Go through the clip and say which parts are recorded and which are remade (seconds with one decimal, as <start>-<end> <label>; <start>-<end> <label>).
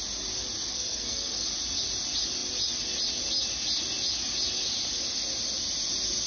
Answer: 0.0-0.7 recorded; 0.7-1.5 remade; 1.5-6.3 recorded